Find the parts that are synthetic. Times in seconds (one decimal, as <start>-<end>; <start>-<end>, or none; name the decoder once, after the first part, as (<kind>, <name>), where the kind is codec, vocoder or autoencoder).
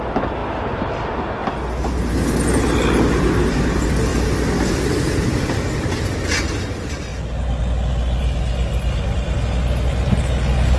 none